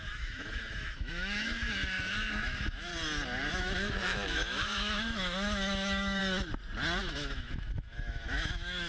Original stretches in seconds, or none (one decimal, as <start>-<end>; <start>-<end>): 2.9-3.5; 6.2-7.0